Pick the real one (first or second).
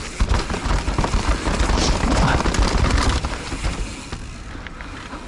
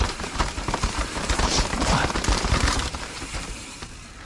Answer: first